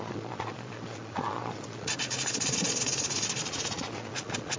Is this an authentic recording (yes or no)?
no